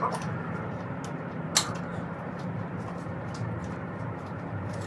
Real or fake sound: real